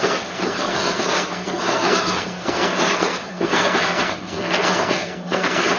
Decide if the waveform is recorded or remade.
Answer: remade